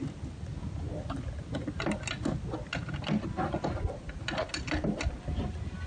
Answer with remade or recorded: recorded